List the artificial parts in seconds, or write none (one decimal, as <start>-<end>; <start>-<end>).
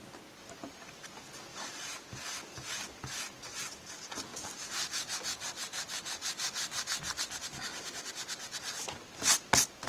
1.5-2.1